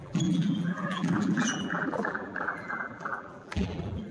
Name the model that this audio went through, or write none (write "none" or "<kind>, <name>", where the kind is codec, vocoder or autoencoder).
vocoder, BigVGAN v2